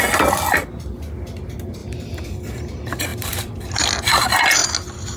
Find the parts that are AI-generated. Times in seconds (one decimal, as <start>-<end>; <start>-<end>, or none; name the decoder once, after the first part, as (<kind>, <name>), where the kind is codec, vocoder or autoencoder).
1.8-2.5 (vocoder, BigVGAN v2); 3.1-3.7